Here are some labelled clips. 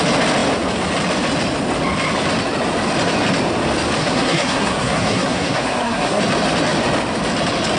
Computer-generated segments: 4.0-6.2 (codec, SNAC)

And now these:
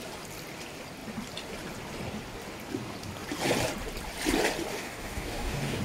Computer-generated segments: 4.7-5.8 (codec, DAC)

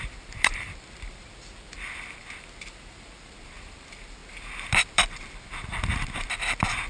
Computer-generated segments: none

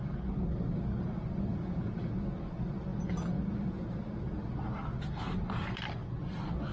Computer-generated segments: 1.5-2.1 (vocoder, Vocos)

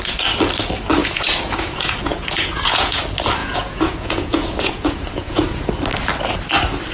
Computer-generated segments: 1.0-3.0 (vocoder, Vocos); 3.4-5.7